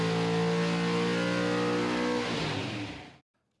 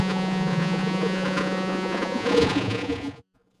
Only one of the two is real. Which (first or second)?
first